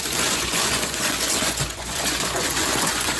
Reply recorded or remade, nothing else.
remade